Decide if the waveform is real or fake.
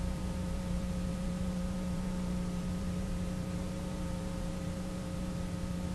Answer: fake